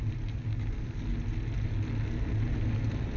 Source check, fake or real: real